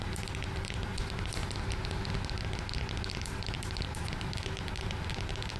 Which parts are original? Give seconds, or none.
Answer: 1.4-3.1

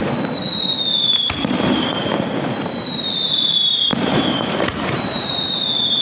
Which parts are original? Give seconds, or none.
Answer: none

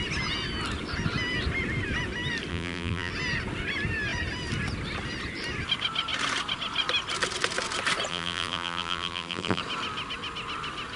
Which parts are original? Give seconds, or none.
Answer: 0.0-2.5; 3.1-8.1; 9.6-11.0

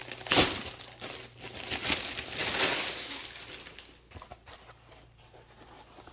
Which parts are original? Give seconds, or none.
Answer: 0.0-6.1

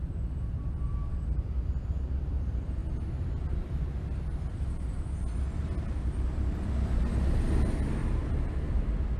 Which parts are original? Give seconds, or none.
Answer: 0.0-8.0; 8.7-9.2